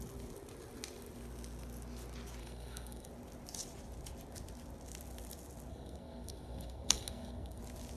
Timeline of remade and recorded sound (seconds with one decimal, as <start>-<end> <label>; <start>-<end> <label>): 0.0-2.4 recorded; 2.4-3.1 remade; 3.1-5.7 recorded; 5.7-7.6 remade; 7.6-8.0 recorded